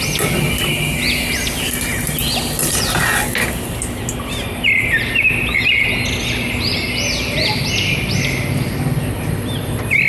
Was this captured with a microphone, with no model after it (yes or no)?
yes